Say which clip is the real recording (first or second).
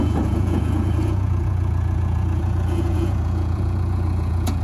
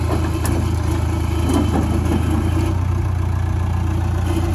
second